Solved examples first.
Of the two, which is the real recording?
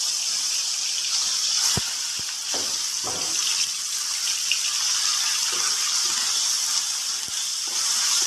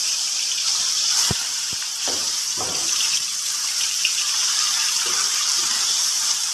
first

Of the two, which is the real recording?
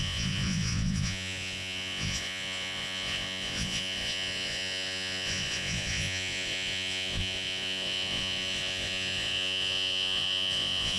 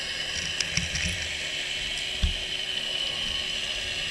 second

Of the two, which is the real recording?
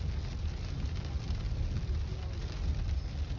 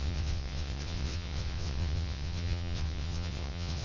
first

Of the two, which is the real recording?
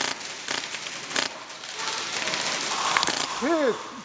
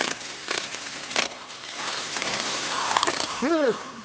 first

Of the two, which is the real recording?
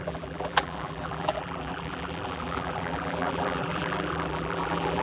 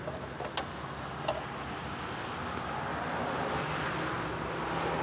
second